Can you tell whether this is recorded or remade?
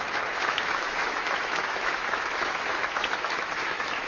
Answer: remade